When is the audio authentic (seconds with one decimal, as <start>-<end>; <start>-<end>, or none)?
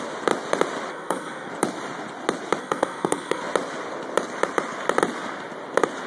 0.0-0.9; 1.5-2.6; 3.4-6.1